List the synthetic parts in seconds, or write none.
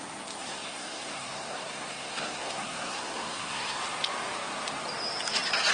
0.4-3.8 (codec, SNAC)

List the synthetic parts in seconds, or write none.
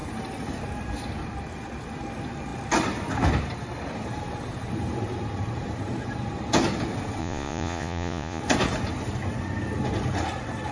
7.2-8.4 (vocoder, Vocos)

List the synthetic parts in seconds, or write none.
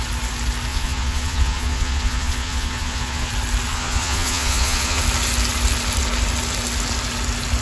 0.7-3.3 (vocoder, Vocos); 3.7-5.0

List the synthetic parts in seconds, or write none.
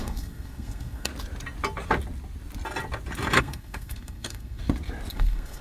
0.0-1.1 (codec, SNAC); 3.4-4.6; 5.1-5.6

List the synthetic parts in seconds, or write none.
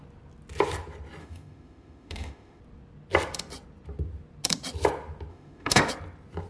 1.2-2.6 (autoencoder, DAC-VAE); 5.3-5.9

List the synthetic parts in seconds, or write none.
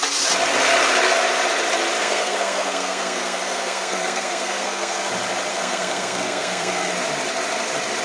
2.0-5.1 (codec, SNAC); 5.5-6.9